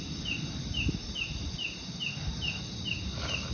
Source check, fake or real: real